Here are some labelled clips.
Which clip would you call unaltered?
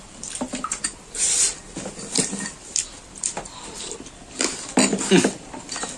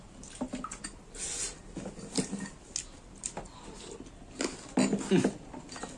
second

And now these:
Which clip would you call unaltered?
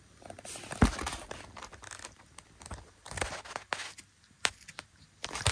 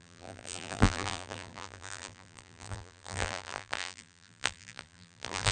first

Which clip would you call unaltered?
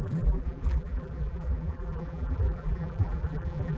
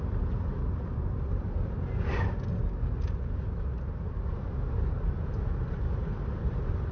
second